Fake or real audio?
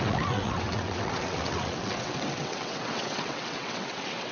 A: fake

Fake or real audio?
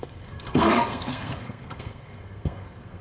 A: fake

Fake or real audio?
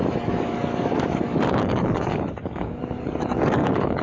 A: fake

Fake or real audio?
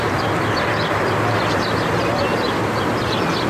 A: real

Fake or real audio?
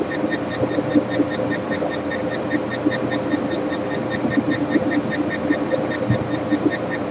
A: real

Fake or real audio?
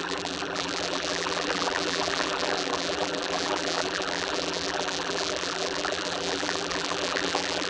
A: fake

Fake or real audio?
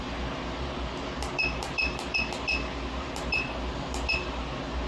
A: real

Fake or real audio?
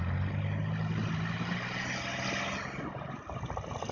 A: real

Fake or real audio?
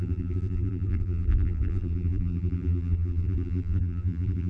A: fake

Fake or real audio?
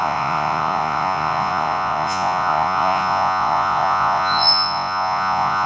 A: fake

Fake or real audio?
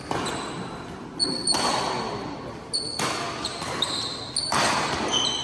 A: real